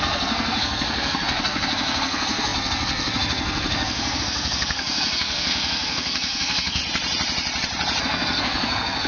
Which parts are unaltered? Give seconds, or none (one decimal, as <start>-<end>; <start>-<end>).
6.8-8.0